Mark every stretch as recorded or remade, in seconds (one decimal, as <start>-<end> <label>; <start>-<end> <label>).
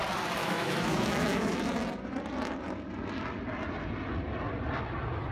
0.0-0.4 recorded; 0.4-1.7 remade; 1.7-5.3 recorded